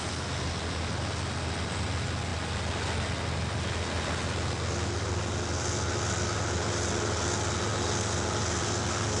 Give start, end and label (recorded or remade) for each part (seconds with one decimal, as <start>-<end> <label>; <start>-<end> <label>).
0.0-9.2 recorded